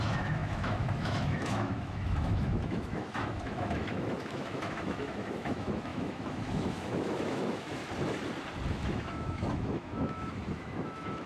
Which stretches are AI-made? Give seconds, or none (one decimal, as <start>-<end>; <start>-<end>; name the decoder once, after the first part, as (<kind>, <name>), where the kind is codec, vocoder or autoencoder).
0.0-7.8 (autoencoder, DAC-VAE); 8.7-11.3